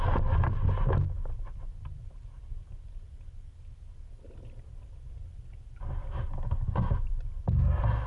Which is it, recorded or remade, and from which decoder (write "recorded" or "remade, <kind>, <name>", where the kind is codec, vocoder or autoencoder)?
recorded